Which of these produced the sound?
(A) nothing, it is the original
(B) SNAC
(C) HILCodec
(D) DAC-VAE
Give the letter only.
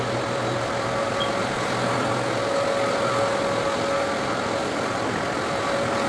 A